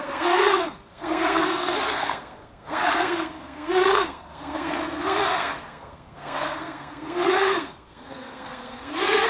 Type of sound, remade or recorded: remade